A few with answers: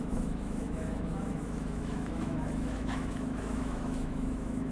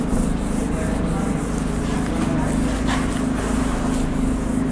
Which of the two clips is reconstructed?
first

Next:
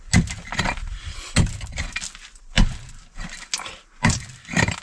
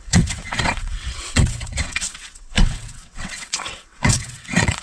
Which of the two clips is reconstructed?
second